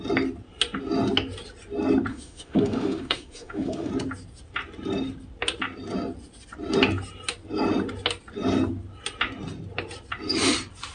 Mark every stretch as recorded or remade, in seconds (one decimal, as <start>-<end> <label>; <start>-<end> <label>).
0.0-2.1 recorded; 2.1-3.9 remade; 3.9-10.9 recorded